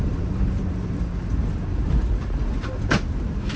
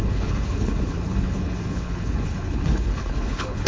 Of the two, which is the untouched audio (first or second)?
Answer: first